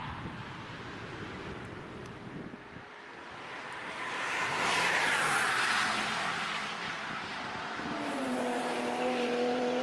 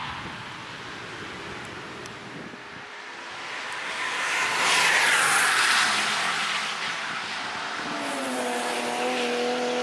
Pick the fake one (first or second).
first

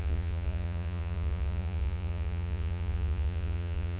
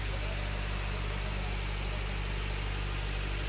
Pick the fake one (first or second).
first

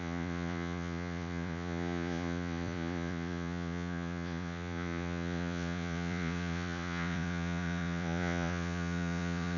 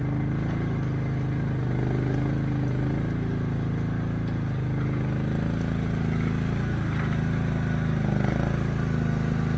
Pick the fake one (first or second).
first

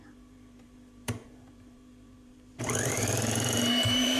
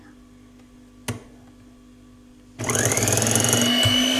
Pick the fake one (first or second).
first